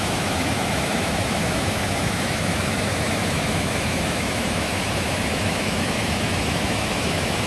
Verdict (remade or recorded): remade